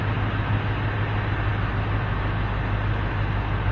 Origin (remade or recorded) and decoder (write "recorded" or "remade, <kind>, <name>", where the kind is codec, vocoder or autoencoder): recorded